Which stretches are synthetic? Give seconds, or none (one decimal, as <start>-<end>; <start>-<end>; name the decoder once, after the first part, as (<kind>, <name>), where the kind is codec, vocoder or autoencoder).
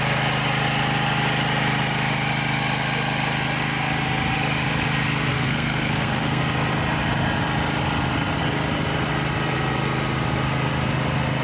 5.3-6.4 (codec, SNAC)